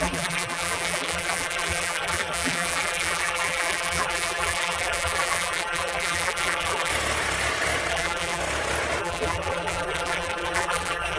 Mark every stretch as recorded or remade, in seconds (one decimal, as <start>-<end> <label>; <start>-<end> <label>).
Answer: 0.0-6.9 remade; 6.9-7.9 recorded; 7.9-8.4 remade; 8.4-9.0 recorded; 9.0-11.2 remade